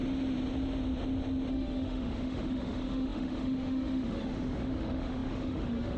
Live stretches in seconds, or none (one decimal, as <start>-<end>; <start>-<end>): 0.0-1.5